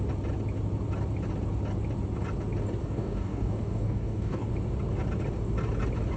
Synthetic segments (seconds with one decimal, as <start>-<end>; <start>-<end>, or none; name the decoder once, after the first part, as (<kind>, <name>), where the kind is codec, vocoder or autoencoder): 2.8-4.5 (codec, DAC)